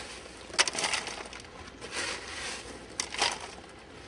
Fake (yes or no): no